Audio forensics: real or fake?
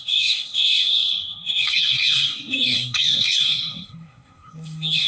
fake